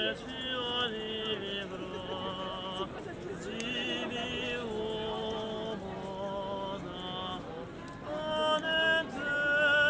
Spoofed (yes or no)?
no